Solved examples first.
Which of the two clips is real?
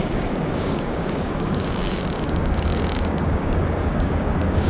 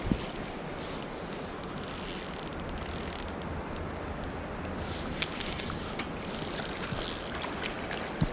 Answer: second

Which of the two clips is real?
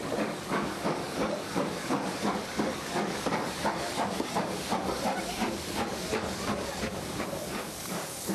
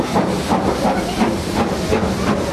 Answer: second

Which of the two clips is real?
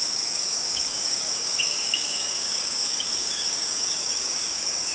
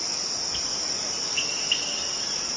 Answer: second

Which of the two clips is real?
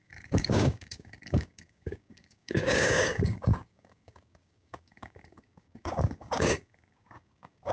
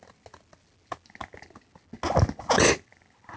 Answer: second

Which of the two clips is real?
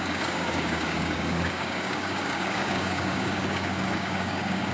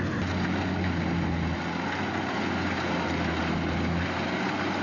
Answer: second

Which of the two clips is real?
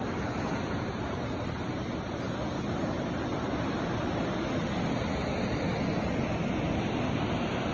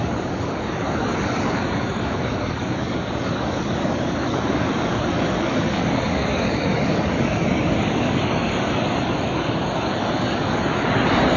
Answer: first